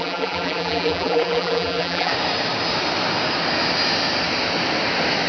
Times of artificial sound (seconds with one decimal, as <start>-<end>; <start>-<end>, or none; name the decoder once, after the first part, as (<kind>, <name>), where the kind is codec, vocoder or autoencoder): 0.0-2.1 (vocoder, BigVGAN v2)